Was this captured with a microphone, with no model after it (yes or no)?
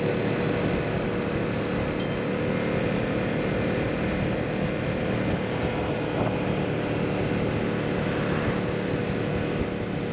yes